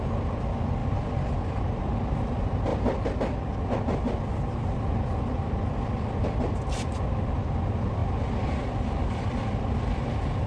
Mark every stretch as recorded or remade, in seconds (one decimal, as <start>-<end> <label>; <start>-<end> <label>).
0.0-0.8 recorded; 0.8-1.9 remade; 1.9-10.5 recorded